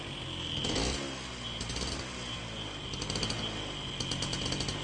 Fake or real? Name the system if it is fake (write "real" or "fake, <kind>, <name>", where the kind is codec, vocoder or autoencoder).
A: real